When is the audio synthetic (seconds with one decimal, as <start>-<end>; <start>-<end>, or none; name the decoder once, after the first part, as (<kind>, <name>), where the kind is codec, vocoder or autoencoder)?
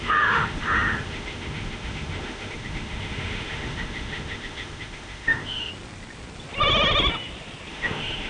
0.0-5.7 (autoencoder, DAC-VAE); 7.7-8.3